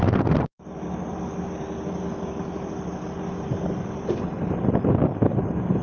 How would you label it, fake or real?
real